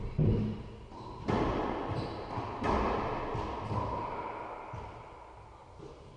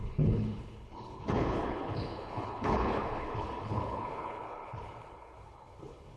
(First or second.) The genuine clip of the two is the first